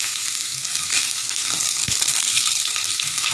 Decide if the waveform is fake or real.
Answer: fake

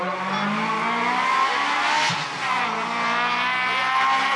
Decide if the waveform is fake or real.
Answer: real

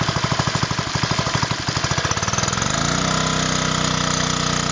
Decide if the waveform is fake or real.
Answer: real